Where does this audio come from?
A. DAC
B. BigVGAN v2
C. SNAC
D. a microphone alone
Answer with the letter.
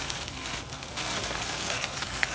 C